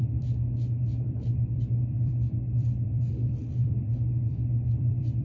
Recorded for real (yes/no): no